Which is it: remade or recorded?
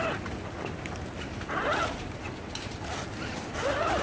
recorded